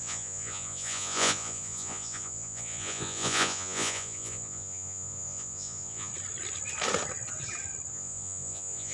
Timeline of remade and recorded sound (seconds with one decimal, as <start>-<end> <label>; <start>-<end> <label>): 0.0-6.1 remade; 6.1-7.9 recorded; 7.9-8.9 remade